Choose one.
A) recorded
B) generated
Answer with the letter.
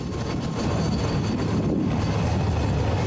A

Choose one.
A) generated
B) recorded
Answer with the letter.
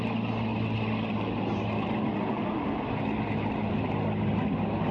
B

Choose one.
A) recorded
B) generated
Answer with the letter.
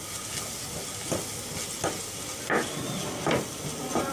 A